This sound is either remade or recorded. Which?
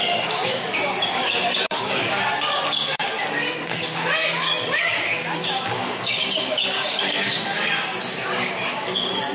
remade